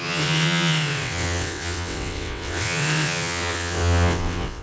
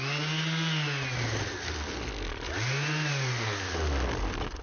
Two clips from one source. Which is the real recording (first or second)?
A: second